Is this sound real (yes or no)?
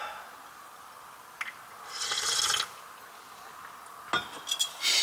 yes